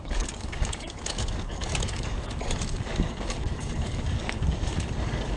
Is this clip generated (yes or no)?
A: yes